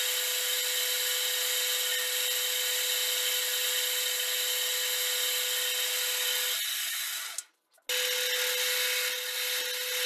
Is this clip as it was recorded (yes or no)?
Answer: yes